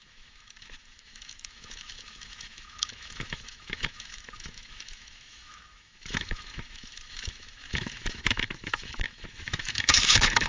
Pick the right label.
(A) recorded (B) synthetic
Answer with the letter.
B